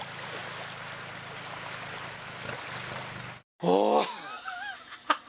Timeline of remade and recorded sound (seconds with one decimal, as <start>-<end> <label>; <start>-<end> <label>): 0.0-5.3 recorded

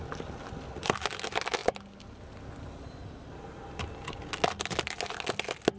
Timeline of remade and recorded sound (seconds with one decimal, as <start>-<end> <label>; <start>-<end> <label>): 0.0-5.8 recorded

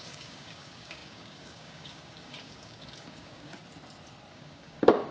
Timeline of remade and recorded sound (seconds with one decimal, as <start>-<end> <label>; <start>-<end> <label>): 0.0-3.6 remade; 3.6-4.3 recorded; 4.3-5.1 remade

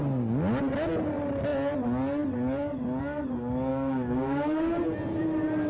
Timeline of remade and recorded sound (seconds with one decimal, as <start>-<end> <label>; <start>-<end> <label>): 0.0-3.7 recorded; 3.7-4.6 remade; 4.6-5.7 recorded

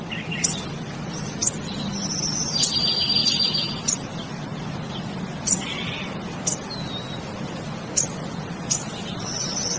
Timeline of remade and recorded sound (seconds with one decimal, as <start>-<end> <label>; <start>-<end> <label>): 0.0-9.8 recorded

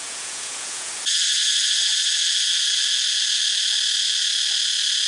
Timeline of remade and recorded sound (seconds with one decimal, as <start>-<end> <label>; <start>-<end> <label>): 0.0-0.9 remade; 0.9-5.1 recorded

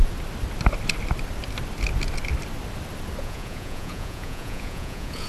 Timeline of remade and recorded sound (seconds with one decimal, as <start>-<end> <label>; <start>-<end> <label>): 0.0-3.2 recorded; 3.2-5.3 remade

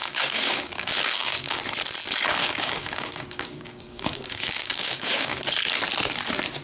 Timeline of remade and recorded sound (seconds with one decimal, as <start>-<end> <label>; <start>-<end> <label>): 0.0-1.6 remade; 1.6-2.4 recorded; 2.4-5.4 remade; 5.4-6.6 recorded